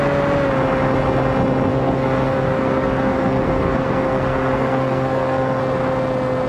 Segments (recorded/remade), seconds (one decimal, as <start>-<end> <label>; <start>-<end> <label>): 0.0-1.7 recorded; 1.7-5.6 remade; 5.6-6.5 recorded